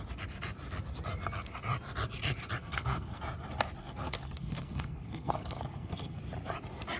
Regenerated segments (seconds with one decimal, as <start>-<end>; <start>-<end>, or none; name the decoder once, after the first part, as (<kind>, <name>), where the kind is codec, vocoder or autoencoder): 2.6-3.2 (codec, SNAC); 3.8-6.2